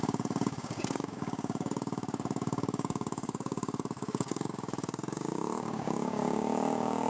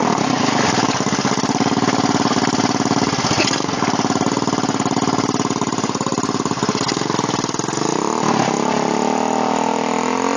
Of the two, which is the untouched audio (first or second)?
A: second